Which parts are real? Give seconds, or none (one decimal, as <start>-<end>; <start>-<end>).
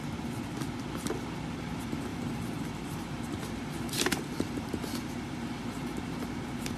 0.0-2.1; 5.6-6.8